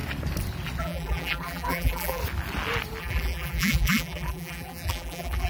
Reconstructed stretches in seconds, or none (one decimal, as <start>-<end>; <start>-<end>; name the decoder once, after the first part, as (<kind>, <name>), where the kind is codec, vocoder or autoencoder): 0.8-2.2 (vocoder, BigVGAN v2); 3.0-5.5